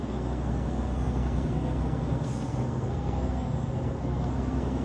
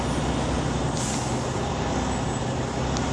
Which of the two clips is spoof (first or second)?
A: first